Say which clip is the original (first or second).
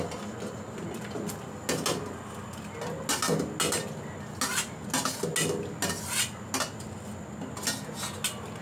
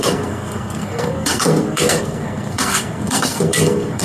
first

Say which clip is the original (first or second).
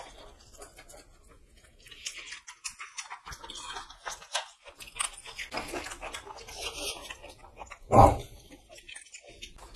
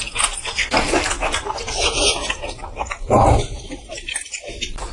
first